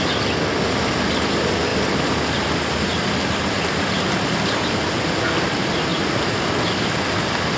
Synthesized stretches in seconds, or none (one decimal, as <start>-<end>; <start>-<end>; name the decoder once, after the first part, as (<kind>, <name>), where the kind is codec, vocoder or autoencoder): none